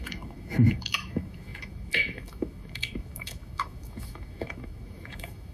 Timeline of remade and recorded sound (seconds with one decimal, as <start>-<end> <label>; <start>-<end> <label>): 0.0-5.5 remade